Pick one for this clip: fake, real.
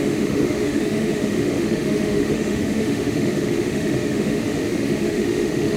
fake